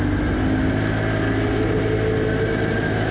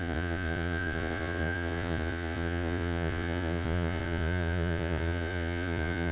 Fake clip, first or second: second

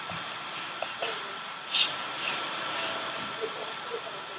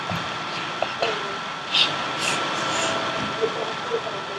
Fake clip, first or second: first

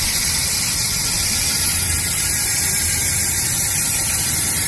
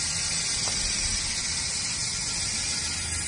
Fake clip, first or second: first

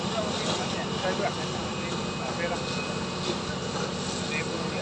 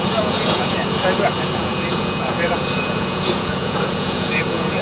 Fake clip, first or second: second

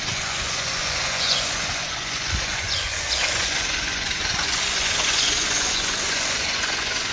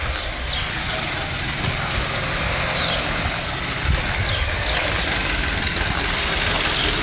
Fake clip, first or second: first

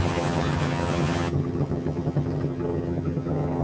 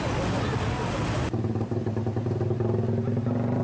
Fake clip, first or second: first